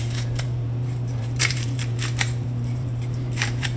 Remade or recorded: remade